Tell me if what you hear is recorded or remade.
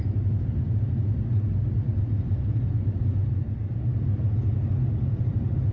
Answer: recorded